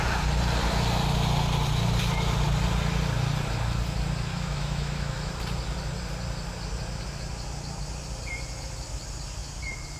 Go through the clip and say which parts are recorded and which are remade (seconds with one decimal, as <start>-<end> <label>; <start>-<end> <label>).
0.0-4.3 recorded; 4.3-5.3 remade; 5.3-10.0 recorded